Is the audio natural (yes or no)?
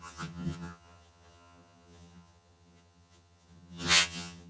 no